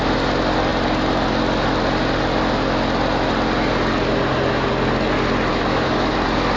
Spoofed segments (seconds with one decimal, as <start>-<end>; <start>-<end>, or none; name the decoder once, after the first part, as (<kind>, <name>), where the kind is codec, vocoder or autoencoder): 5.5-6.1 (autoencoder, DAC-VAE)

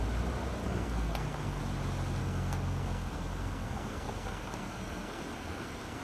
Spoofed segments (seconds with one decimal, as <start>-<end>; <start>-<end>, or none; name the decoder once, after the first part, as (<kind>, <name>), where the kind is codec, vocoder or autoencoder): 0.6-1.6 (codec, SNAC); 2.2-6.0

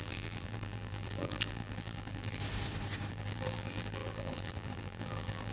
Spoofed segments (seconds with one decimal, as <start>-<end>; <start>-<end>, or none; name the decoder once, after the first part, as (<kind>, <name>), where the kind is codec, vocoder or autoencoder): 0.0-2.4 (vocoder, BigVGAN v2); 3.1-5.5

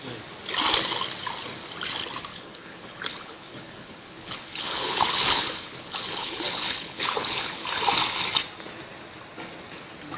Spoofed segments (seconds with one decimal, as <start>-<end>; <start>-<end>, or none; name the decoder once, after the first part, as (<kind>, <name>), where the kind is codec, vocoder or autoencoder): 2.3-7.5 (codec, HILCodec)

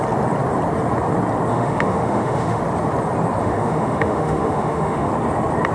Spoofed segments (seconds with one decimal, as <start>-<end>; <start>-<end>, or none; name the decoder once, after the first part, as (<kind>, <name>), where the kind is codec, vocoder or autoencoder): 1.5-2.6 (autoencoder, DAC-VAE); 3.4-5.1

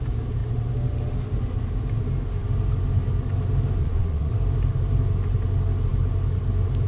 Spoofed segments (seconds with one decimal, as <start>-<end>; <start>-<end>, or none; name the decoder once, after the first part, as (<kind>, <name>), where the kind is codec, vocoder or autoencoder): 3.8-4.3 (vocoder, Vocos)

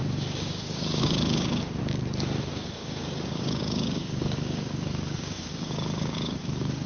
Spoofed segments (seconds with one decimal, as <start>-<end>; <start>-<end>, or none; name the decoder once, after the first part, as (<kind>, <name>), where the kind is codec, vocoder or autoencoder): 0.0-1.8 (codec, DAC); 2.5-6.9

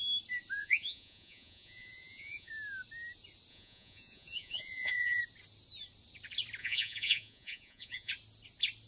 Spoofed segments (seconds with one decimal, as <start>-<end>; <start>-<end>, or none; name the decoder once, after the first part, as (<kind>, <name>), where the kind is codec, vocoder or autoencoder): 0.6-2.5 (vocoder, Vocos); 3.5-5.2; 6.6-8.1